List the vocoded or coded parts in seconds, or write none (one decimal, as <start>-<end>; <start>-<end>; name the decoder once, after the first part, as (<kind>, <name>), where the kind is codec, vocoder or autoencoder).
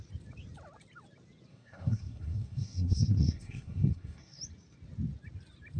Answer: 1.5-4.4 (codec, SNAC)